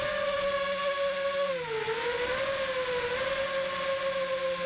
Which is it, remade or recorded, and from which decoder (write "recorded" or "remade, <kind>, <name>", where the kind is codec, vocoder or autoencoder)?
recorded